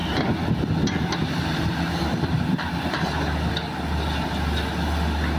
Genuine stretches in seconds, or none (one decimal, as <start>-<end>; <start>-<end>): 0.0-1.2; 3.9-5.4